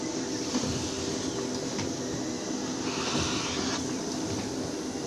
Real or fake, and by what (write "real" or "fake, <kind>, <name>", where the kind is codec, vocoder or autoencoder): real